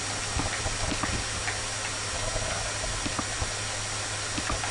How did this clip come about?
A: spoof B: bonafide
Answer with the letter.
B